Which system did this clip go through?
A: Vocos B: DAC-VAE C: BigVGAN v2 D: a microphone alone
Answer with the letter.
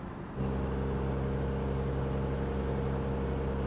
D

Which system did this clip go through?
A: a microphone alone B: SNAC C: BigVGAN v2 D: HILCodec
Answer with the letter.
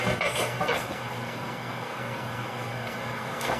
B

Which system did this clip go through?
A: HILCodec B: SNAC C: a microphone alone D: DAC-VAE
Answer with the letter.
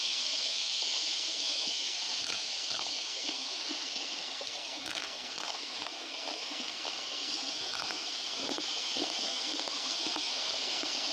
B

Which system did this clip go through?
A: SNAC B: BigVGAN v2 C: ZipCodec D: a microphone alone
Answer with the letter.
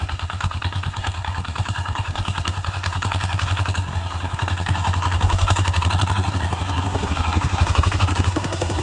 A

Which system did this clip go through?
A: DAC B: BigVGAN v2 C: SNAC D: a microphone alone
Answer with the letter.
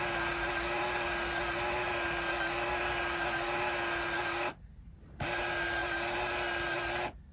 D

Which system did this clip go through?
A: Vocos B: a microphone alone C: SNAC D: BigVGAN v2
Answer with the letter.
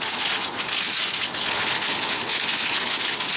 B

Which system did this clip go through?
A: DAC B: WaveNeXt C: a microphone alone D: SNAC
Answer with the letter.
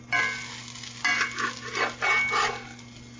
C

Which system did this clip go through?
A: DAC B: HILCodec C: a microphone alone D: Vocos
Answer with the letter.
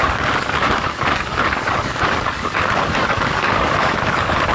A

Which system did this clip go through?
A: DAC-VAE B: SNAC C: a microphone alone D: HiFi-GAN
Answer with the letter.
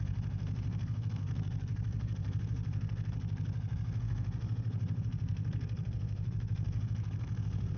B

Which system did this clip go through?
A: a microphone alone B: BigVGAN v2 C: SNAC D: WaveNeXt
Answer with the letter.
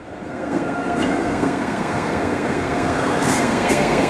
C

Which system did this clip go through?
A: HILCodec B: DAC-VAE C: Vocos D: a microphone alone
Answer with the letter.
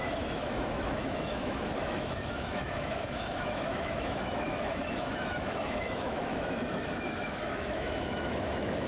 B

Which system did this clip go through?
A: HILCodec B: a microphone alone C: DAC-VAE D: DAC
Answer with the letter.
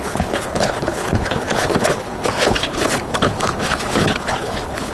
A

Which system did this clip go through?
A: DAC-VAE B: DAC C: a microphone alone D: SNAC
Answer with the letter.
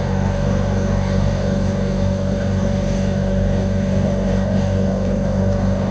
B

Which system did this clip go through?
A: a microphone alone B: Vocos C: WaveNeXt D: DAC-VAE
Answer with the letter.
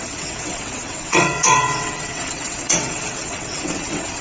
C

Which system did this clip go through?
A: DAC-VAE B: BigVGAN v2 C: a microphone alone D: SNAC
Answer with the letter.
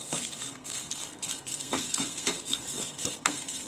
D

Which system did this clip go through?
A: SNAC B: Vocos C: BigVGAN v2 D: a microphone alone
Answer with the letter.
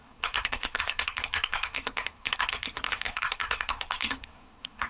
A